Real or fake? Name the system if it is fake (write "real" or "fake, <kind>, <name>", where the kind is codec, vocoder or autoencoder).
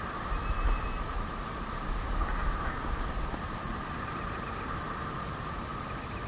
fake, vocoder, BigVGAN v2